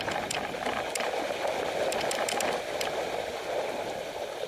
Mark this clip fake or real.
real